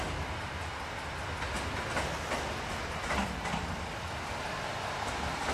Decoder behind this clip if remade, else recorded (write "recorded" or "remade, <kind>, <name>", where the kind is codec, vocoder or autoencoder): recorded